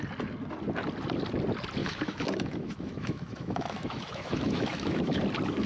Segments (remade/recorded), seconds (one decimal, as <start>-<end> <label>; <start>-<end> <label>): 0.0-1.8 recorded; 1.8-5.2 remade; 5.2-5.7 recorded